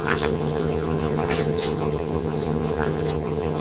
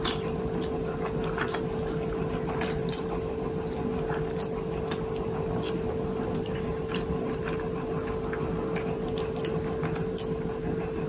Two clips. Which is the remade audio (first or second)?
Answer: first